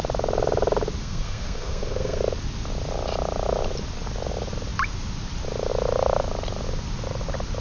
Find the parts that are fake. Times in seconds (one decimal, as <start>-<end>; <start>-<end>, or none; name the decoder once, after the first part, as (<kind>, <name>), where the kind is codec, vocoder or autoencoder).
1.0-2.2 (codec, SNAC)